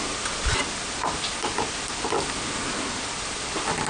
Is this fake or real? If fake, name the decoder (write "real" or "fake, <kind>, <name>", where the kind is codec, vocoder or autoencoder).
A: real